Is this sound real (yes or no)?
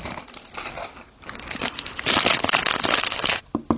yes